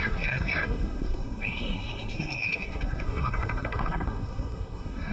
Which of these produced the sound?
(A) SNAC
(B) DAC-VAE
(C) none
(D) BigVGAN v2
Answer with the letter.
A